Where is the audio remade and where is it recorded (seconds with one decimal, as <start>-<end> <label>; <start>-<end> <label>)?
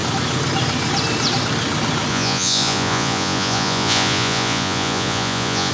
0.0-2.1 recorded; 2.1-5.7 remade